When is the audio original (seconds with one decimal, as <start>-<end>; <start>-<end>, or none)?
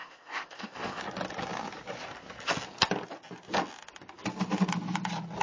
1.0-5.4